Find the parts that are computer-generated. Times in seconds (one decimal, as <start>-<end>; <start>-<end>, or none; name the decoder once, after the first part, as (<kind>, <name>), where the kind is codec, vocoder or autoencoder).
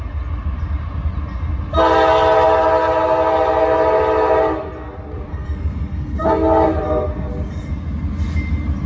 5.3-6.3 (codec, SNAC)